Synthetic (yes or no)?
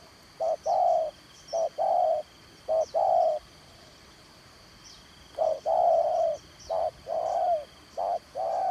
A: no